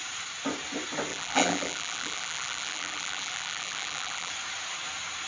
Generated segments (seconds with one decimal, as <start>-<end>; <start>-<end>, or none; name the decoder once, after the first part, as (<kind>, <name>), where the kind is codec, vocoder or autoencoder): 1.1-4.3 (vocoder, BigVGAN v2)